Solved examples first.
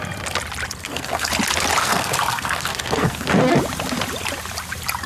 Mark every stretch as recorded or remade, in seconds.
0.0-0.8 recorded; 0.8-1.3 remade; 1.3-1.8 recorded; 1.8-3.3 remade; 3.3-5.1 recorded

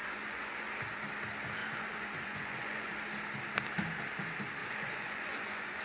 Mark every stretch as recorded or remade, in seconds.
0.0-0.7 remade; 0.7-1.6 recorded; 1.6-2.9 remade; 2.9-4.6 recorded; 4.6-5.8 remade

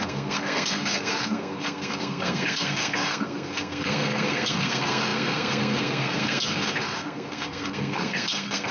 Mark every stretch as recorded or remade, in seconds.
0.0-8.7 remade

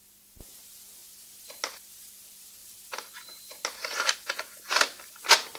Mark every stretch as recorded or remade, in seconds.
0.0-5.6 recorded

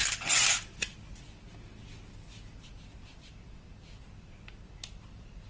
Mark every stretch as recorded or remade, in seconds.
0.0-5.5 recorded

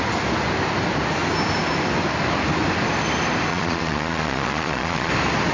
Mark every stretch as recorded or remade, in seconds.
0.0-3.5 recorded; 3.5-5.1 remade; 5.1-5.5 recorded